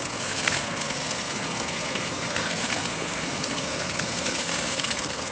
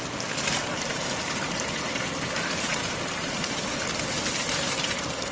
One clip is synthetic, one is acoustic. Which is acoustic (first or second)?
second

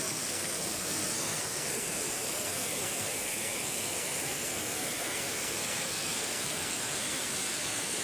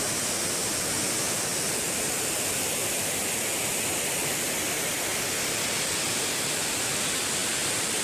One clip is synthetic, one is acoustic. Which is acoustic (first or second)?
second